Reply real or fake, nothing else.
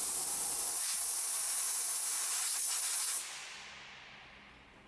real